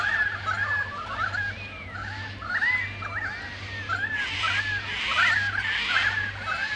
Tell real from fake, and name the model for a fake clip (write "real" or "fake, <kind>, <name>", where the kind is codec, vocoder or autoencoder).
real